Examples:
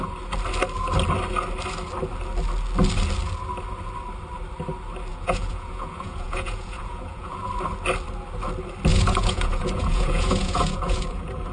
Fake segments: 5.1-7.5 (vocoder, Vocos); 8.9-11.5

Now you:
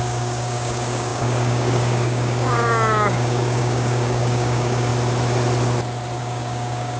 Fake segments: 0.0-4.9 (codec, DAC); 6.2-7.0